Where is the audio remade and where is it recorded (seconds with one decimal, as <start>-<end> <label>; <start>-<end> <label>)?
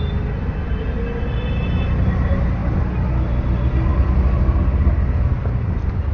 0.0-6.1 recorded